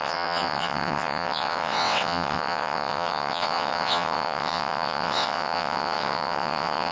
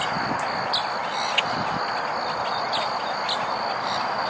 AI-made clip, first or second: first